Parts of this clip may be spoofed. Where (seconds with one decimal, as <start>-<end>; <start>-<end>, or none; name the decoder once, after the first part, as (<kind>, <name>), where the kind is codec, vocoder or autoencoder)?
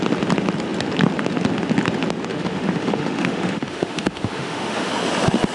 2.3-4.9 (autoencoder, DAC-VAE)